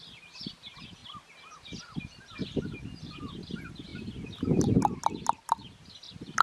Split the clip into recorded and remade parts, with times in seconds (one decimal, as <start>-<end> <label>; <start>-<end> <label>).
0.0-1.0 remade; 1.0-1.8 recorded; 1.8-3.9 remade; 3.9-6.0 recorded; 6.0-6.4 remade